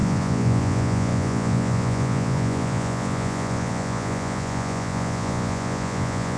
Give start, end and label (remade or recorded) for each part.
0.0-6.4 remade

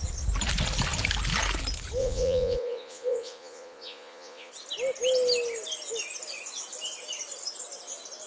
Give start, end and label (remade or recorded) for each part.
0.0-2.0 recorded; 2.0-4.5 remade; 4.5-8.3 recorded

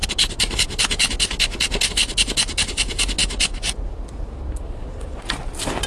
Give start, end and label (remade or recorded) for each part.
0.0-5.9 recorded